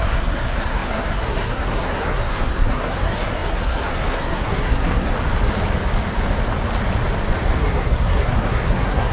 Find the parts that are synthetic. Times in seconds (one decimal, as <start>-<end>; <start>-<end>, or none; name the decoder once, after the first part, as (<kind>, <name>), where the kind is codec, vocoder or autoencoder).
0.0-5.1 (codec, SNAC); 7.6-9.1